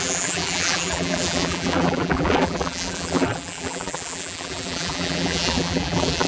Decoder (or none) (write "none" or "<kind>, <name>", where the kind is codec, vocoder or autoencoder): vocoder, BigVGAN v2